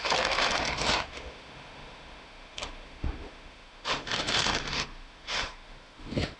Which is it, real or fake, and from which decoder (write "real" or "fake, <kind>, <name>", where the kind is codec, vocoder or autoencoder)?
fake, autoencoder, DAC-VAE